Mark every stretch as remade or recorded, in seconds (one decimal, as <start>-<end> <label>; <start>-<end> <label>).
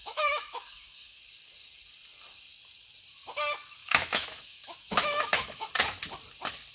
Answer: 0.0-1.2 remade; 1.2-3.8 recorded; 3.8-5.7 remade; 5.7-6.7 recorded